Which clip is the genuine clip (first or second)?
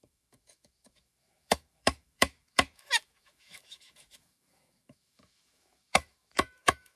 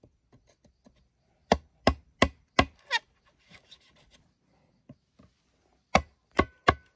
second